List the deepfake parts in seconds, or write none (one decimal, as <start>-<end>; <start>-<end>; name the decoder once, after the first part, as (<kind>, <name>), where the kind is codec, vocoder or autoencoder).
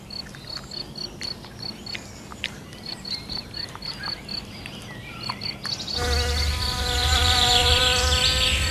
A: 2.3-3.9 (vocoder, BigVGAN v2); 7.0-7.8